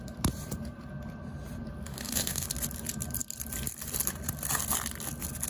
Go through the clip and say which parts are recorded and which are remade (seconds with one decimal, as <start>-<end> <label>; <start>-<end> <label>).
0.0-1.9 recorded; 1.9-2.5 remade; 2.5-5.5 recorded